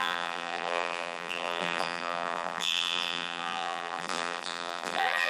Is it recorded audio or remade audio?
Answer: remade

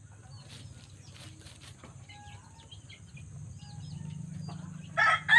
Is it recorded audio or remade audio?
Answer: recorded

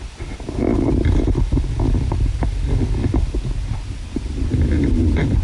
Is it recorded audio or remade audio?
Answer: recorded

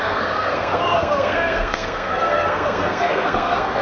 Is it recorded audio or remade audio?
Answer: remade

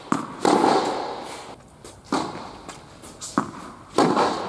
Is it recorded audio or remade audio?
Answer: recorded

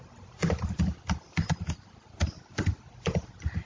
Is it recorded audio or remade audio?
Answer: recorded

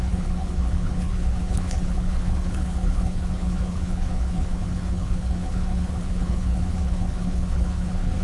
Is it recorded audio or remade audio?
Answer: remade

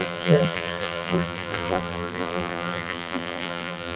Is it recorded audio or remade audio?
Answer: remade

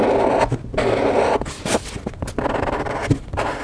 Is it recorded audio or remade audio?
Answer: recorded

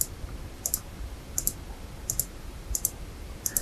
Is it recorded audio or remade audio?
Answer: recorded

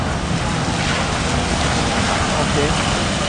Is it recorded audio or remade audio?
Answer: recorded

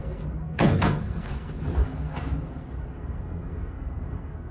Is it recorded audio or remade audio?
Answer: remade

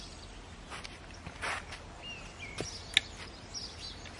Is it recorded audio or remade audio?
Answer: recorded